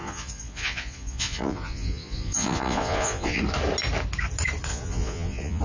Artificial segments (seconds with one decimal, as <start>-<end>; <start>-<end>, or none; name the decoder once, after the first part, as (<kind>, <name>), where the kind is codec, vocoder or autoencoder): 0.0-3.4 (vocoder, Vocos); 4.7-5.6